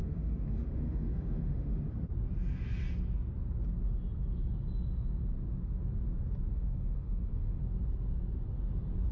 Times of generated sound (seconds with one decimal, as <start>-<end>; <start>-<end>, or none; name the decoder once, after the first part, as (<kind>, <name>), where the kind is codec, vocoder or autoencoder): 0.0-1.9 (autoencoder, DAC-VAE); 6.5-7.6